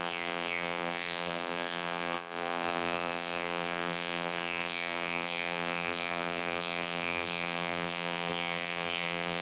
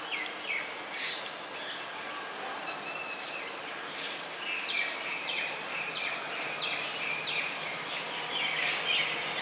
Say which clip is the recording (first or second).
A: second